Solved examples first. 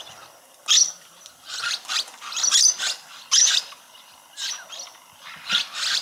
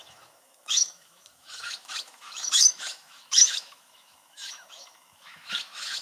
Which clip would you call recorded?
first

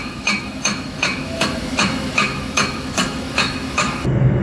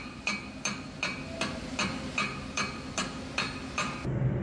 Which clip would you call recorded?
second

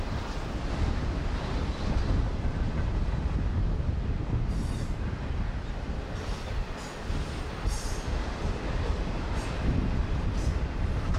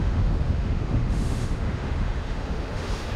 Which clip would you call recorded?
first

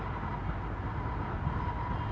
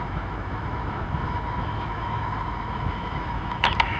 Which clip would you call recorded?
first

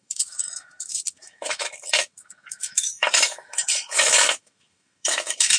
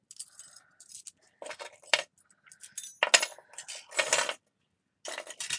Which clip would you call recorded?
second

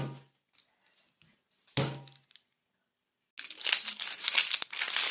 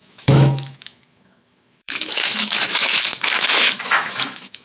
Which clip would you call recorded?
first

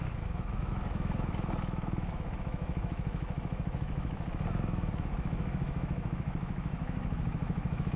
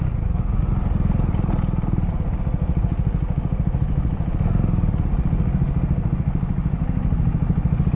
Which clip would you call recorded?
second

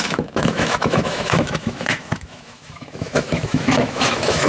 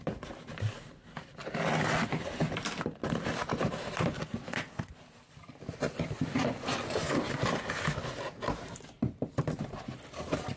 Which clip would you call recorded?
second